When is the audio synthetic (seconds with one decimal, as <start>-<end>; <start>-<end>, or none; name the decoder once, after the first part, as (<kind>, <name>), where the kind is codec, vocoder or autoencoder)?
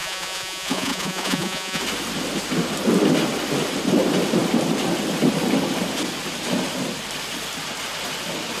0.0-1.8 (vocoder, Vocos)